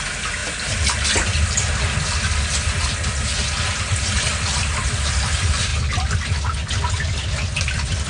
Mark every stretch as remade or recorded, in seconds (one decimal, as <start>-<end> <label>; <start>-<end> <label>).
0.0-8.1 recorded